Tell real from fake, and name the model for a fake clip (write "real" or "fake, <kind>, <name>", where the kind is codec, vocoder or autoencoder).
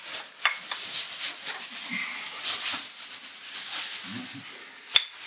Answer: real